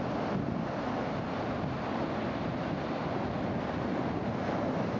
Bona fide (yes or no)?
yes